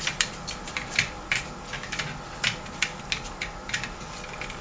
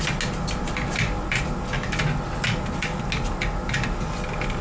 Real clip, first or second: second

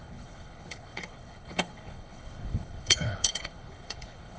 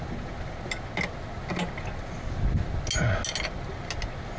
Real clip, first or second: second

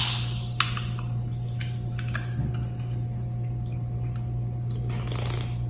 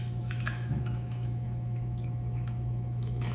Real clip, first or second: first